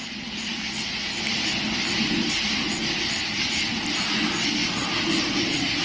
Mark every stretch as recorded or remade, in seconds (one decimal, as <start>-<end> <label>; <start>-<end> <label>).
0.0-5.8 recorded